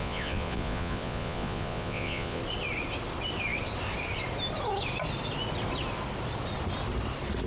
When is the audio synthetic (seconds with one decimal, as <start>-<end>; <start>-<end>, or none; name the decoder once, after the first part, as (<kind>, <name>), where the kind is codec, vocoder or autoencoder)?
0.0-2.4 (vocoder, Vocos)